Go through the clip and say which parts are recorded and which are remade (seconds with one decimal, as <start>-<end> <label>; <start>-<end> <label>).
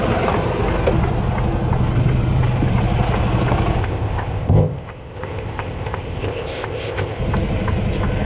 0.0-3.8 recorded; 3.8-7.2 remade; 7.2-8.2 recorded